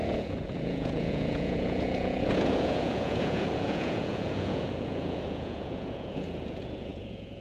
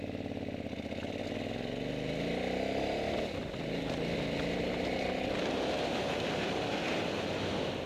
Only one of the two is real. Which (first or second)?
second